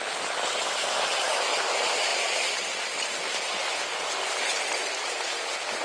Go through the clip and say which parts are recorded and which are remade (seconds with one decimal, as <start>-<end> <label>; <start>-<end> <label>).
0.0-2.1 recorded; 2.1-2.8 remade; 2.8-5.8 recorded